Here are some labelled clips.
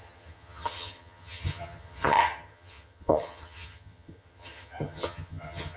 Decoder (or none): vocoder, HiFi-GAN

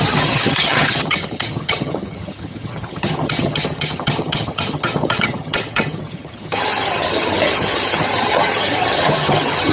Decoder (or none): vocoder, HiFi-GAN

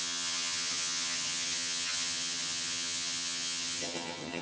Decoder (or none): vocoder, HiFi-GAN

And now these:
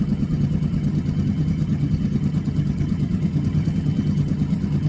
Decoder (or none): vocoder, HiFi-GAN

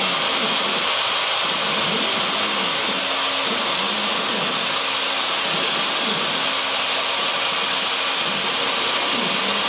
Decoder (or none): none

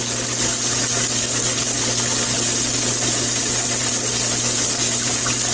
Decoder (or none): none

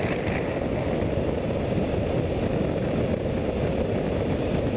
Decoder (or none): none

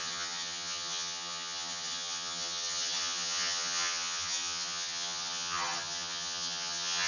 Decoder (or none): vocoder, HiFi-GAN